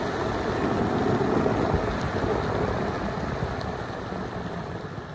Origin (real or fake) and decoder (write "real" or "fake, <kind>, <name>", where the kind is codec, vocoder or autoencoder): real